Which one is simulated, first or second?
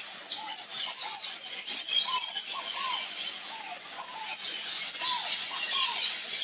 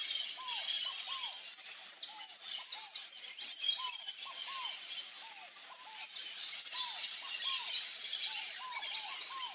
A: first